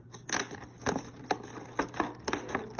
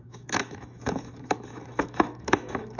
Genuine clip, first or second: first